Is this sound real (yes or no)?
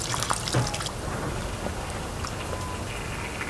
yes